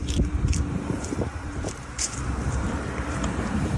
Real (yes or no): no